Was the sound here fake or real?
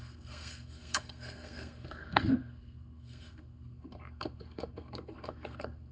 fake